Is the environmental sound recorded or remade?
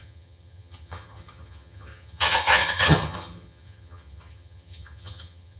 remade